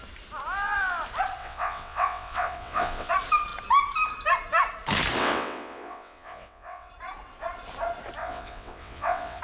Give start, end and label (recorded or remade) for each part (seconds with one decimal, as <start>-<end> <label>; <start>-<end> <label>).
0.0-1.4 recorded; 1.4-3.1 remade; 3.1-5.2 recorded; 5.2-6.9 remade; 6.9-8.2 recorded; 8.2-9.4 remade